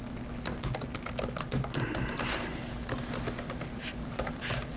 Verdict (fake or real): real